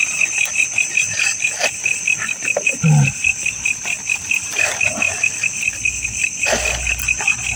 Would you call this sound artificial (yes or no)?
no